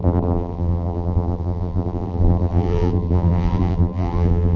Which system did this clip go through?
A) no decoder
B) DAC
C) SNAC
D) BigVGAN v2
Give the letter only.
D